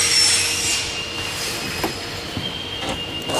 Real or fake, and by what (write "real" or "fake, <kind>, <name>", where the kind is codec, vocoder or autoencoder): real